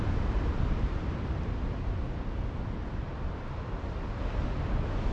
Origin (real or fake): real